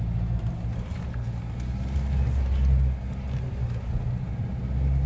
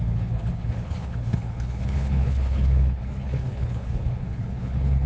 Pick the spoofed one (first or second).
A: second